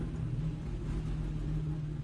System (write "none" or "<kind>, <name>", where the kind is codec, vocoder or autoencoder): none